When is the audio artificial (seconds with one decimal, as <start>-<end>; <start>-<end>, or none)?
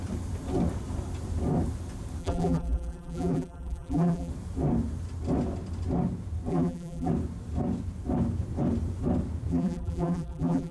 2.2-4.3; 6.5-7.1; 9.5-10.7